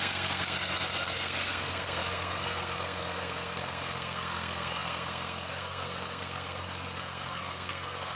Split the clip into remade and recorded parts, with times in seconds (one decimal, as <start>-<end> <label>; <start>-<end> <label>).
0.0-8.2 remade